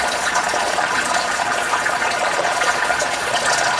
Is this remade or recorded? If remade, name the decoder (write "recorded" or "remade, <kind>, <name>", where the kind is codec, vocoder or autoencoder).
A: remade, vocoder, Vocos